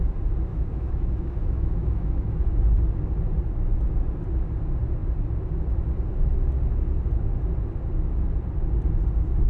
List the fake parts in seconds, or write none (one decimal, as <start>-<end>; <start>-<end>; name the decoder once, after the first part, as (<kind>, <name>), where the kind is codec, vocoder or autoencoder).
0.5-2.5 (autoencoder, DAC-VAE)